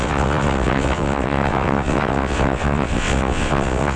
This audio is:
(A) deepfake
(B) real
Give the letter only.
A